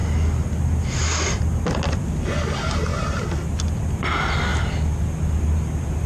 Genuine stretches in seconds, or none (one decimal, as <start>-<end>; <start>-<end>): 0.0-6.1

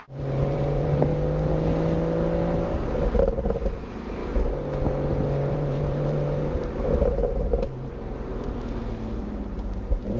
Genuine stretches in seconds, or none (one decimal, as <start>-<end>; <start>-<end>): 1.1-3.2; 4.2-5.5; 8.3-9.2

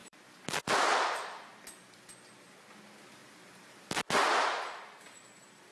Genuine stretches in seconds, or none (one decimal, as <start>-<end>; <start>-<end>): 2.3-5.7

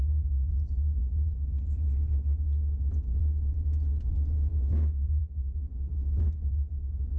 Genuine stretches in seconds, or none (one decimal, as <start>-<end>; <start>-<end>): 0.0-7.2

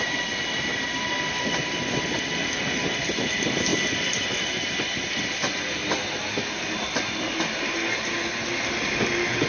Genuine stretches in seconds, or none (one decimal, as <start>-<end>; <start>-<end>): 0.0-0.7; 1.6-3.7; 4.6-9.5

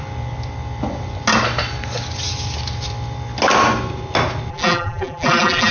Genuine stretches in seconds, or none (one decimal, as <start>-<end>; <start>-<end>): 0.0-4.5

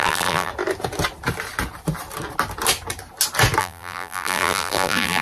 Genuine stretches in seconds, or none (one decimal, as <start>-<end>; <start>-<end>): 0.5-3.6

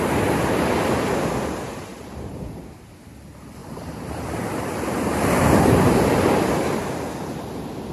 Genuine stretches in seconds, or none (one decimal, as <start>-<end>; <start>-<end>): 0.0-1.9; 2.5-3.6; 5.8-7.9